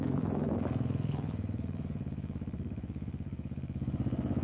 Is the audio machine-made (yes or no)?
yes